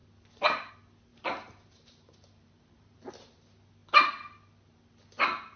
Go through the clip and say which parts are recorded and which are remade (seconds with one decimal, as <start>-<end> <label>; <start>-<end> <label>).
0.0-1.1 recorded; 1.1-3.1 remade; 3.1-5.6 recorded